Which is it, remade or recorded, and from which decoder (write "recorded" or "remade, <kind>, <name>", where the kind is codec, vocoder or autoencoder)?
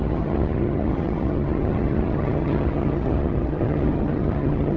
remade, vocoder, HiFi-GAN